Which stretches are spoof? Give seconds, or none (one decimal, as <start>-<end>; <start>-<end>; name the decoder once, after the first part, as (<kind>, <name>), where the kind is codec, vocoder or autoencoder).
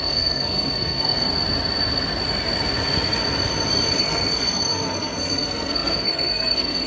0.0-1.3 (codec, SNAC); 4.0-6.9